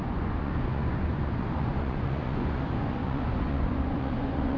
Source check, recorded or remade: remade